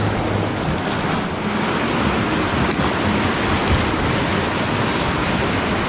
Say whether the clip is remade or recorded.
recorded